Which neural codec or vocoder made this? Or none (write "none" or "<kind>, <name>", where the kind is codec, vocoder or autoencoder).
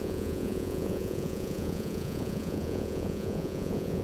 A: vocoder, Vocos